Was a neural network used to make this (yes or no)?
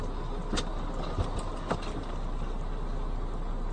no